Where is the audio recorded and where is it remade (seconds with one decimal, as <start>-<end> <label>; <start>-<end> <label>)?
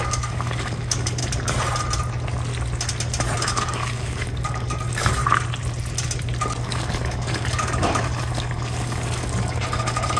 0.0-1.2 remade; 1.2-3.5 recorded; 3.5-5.2 remade; 5.2-6.6 recorded; 6.6-10.2 remade